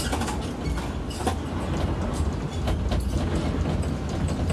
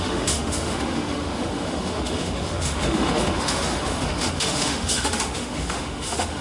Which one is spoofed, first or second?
second